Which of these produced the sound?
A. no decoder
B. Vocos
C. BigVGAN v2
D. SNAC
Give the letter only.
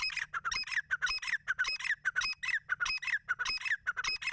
A